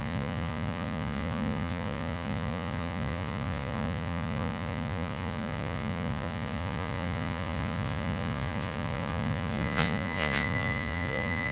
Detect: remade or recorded remade